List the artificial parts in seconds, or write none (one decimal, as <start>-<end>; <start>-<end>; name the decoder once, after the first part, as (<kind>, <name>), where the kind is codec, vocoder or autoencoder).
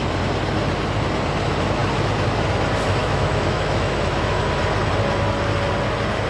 3.0-4.4 (autoencoder, DAC-VAE)